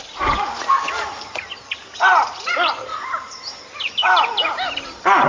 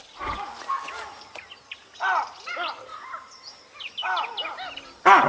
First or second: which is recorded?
second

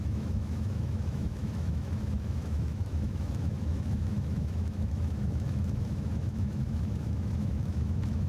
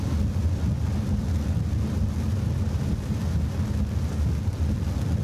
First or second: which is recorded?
second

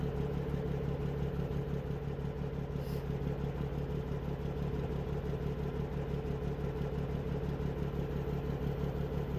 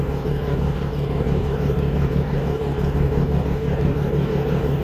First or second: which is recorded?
first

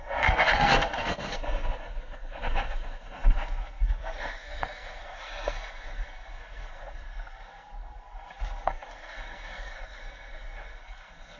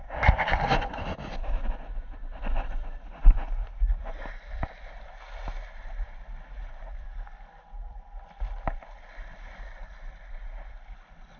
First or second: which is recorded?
second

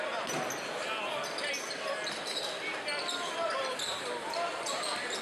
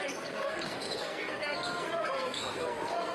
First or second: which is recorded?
first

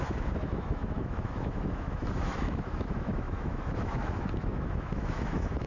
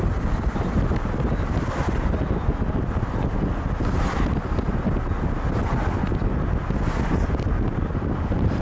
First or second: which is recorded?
second